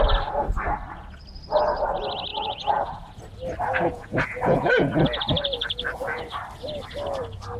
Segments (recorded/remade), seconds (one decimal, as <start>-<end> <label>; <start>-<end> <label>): 0.0-2.3 recorded; 2.3-3.2 remade; 3.2-3.7 recorded; 3.7-6.2 remade; 6.2-7.6 recorded